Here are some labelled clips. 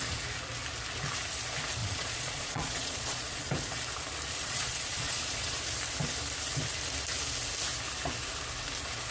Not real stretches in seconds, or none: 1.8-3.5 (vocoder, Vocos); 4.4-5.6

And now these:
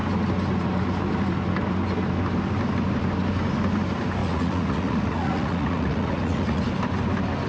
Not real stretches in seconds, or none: 4.2-6.6 (vocoder, Vocos)

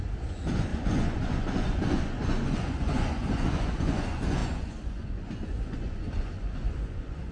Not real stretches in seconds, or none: 0.0-7.3 (vocoder, Vocos)

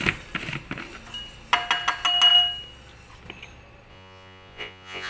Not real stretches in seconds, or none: 3.9-5.1 (vocoder, Vocos)